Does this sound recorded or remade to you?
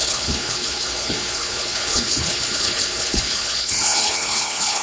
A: remade